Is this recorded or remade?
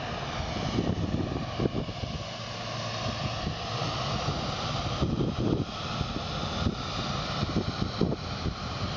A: recorded